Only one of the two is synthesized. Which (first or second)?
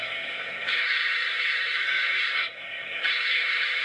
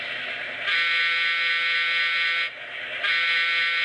first